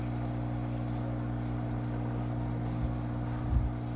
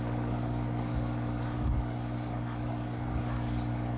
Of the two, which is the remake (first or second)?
second